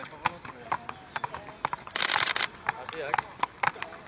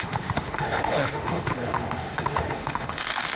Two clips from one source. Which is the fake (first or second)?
second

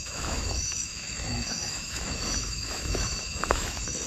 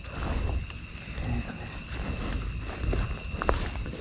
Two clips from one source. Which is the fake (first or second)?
first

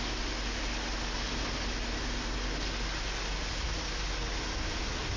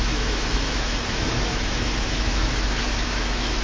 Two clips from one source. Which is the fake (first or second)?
second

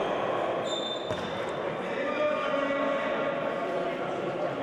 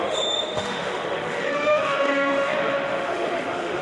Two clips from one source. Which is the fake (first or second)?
second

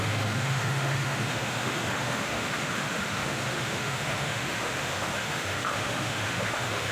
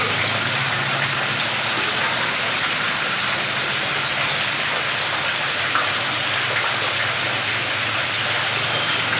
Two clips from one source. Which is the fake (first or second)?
first